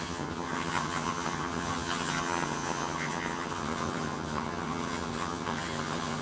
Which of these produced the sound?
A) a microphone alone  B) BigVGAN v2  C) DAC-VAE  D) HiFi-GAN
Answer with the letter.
D